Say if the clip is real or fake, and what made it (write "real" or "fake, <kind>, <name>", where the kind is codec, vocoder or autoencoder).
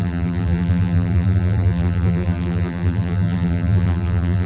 fake, vocoder, BigVGAN v2